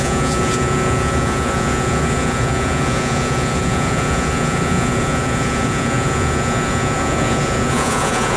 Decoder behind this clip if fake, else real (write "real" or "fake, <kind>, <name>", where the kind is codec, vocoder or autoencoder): fake, vocoder, Vocos